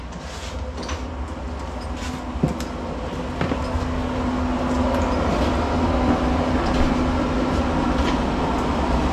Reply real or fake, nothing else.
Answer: real